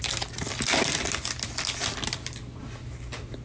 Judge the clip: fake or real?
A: real